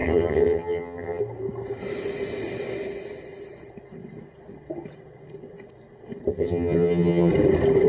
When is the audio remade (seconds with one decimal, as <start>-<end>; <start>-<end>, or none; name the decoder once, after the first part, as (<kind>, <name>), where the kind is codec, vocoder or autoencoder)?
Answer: 0.0-1.2 (vocoder, HiFi-GAN); 6.3-7.3